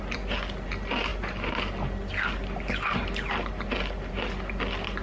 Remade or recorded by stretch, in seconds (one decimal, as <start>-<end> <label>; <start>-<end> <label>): 0.0-5.0 recorded